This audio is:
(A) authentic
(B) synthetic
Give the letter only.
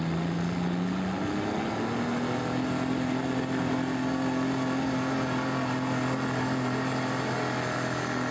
A